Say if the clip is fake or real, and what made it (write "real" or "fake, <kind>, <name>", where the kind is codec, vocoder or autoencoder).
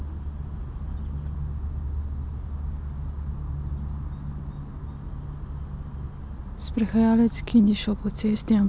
real